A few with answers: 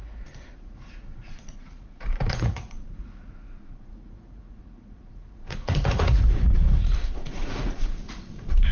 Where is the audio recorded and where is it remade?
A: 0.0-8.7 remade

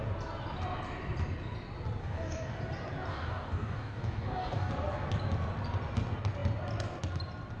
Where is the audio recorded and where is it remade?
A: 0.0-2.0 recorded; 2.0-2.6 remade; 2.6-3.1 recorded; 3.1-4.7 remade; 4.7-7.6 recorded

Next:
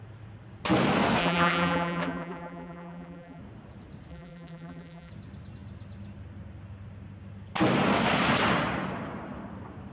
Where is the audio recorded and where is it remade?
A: 0.0-1.2 recorded; 1.2-3.4 remade; 3.4-4.1 recorded; 4.1-5.1 remade; 5.1-9.9 recorded

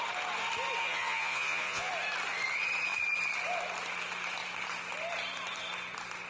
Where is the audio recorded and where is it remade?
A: 0.0-0.8 recorded; 0.8-1.9 remade; 1.9-6.3 recorded

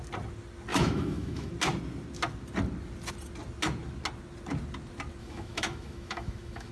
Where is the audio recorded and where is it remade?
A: 0.0-0.7 recorded; 0.7-1.5 remade; 1.5-5.2 recorded; 5.2-6.7 remade

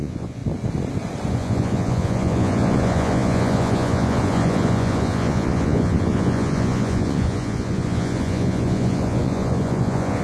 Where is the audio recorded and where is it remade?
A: 0.0-0.4 remade; 0.4-1.3 recorded; 1.3-10.2 remade